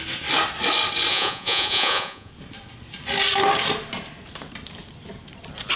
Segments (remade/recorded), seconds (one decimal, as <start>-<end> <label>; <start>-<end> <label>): 0.0-1.1 recorded; 1.1-2.3 remade; 2.3-5.8 recorded